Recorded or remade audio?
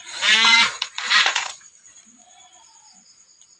remade